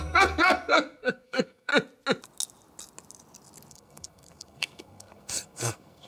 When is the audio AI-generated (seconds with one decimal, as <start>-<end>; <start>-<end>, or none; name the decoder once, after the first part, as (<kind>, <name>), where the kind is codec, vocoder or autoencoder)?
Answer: 0.0-1.7 (codec, SNAC); 3.7-6.1